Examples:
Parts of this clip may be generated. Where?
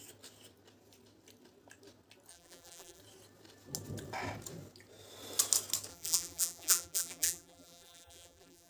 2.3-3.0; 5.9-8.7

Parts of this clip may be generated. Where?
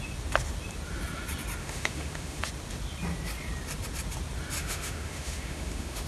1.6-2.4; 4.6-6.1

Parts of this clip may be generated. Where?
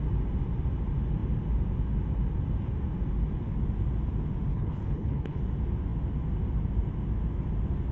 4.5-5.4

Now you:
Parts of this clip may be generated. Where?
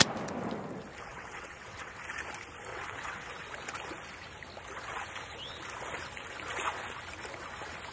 1.1-2.0; 2.7-3.3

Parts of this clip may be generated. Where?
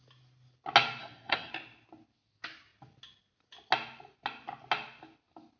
1.0-1.5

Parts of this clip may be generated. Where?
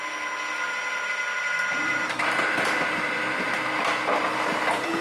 0.5-3.5